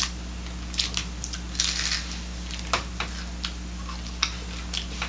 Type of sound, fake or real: real